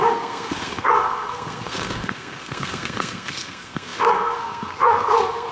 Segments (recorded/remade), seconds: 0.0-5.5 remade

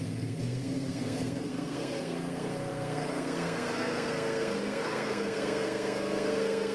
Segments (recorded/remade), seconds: 0.0-6.7 remade

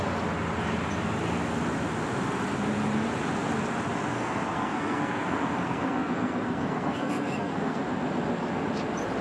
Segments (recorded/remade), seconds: 0.0-4.1 recorded; 4.1-7.8 remade; 7.8-9.2 recorded

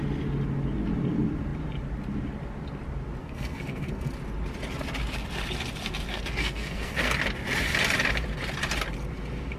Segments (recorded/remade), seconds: 0.0-3.2 recorded; 3.2-4.1 remade; 4.1-6.4 recorded; 6.4-7.1 remade; 7.1-9.6 recorded

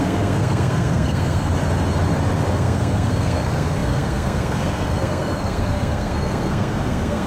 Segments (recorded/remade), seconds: 0.0-1.5 remade; 1.5-2.5 recorded; 2.5-7.3 remade

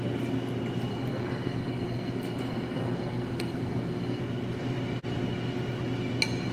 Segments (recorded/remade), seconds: 0.0-0.9 recorded; 0.9-4.2 remade; 4.2-6.5 recorded

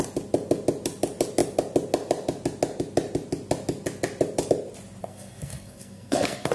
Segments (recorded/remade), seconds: 0.0-5.0 recorded; 5.0-6.5 remade

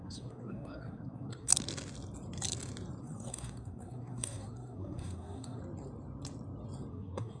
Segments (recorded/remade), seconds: 0.0-1.5 remade; 1.5-3.0 recorded; 3.0-5.6 remade; 5.6-6.9 recorded; 6.9-7.4 remade